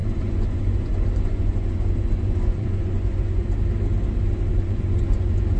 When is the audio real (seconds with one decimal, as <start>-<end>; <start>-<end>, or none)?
3.4-4.5